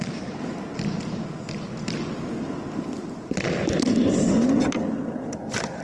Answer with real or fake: real